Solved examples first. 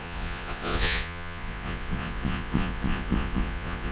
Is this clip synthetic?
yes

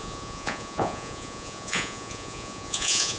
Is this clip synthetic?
yes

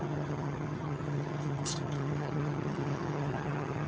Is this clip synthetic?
yes